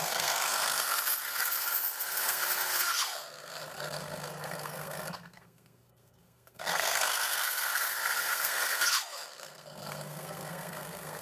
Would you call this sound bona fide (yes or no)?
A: no